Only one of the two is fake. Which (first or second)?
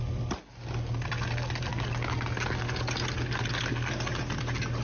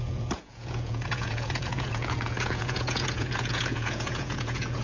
second